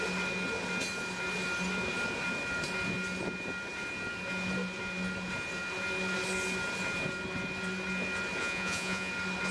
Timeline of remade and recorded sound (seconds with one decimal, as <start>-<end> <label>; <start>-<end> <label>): 0.0-8.4 recorded; 8.4-9.1 remade; 9.1-9.5 recorded